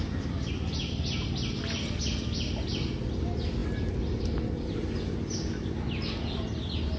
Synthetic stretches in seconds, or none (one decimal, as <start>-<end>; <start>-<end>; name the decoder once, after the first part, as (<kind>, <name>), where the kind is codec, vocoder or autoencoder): none